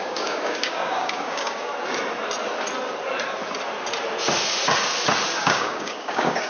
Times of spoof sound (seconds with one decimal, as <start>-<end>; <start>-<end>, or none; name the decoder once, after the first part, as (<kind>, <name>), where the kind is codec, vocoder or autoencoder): 0.0-1.7 (codec, DAC); 5.4-6.5